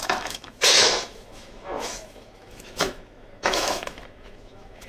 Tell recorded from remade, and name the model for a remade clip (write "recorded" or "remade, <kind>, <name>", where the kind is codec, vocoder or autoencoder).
remade, autoencoder, DAC-VAE